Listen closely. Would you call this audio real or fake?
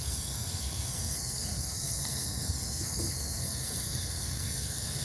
fake